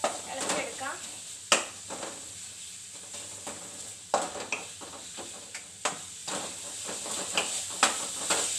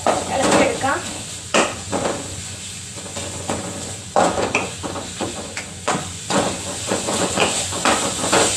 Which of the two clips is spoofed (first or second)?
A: second